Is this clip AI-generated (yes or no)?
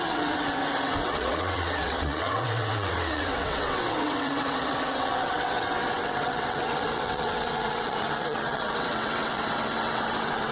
yes